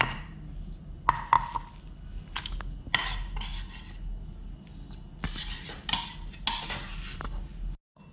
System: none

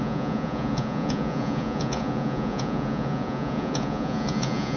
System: vocoder, Vocos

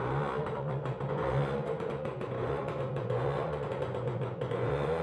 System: vocoder, Vocos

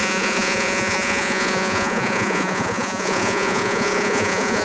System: vocoder, Vocos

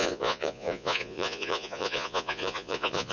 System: vocoder, Vocos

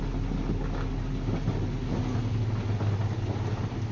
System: none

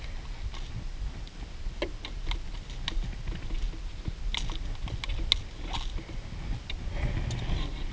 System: none